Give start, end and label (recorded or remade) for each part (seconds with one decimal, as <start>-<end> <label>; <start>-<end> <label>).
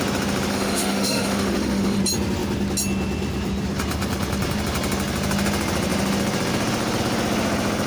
0.0-0.5 recorded; 0.5-2.0 remade; 2.0-7.9 recorded